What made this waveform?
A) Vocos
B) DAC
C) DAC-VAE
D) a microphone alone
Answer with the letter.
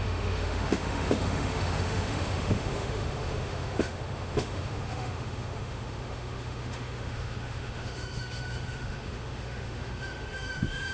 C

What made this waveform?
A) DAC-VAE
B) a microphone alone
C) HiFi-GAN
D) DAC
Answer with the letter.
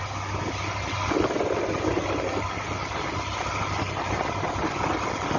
B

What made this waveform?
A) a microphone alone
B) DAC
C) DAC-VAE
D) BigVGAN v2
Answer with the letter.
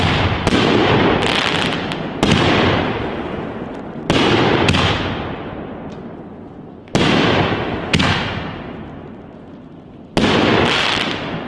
A